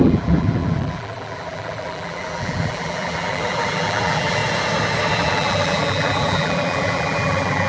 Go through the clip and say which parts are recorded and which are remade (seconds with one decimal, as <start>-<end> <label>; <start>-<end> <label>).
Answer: 0.0-4.4 remade; 4.4-5.1 recorded; 5.1-7.7 remade